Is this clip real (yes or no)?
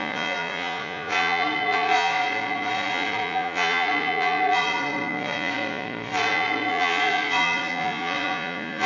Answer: no